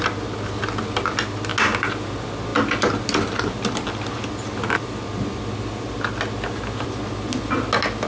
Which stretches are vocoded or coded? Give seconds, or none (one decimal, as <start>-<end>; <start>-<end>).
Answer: none